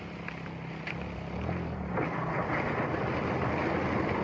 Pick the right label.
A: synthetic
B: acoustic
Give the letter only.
B